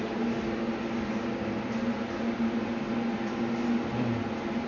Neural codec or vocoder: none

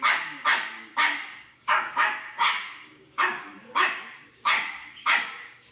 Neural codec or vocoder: codec, DAC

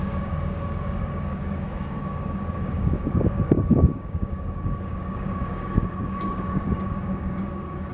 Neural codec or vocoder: codec, DAC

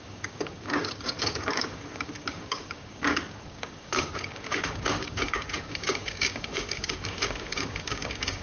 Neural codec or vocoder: codec, DAC